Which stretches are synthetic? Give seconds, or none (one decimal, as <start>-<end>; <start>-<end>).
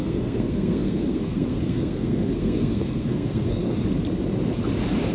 0.0-3.6